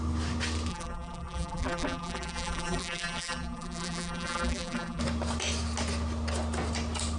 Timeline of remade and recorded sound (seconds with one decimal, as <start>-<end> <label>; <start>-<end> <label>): 0.0-0.7 recorded; 0.7-5.0 remade; 5.0-7.2 recorded